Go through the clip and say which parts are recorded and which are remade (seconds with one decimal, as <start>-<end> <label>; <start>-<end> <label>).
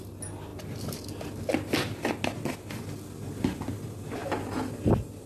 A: 0.0-5.3 recorded